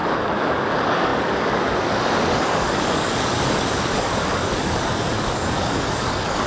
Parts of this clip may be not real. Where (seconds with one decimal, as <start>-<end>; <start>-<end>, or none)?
0.0-6.5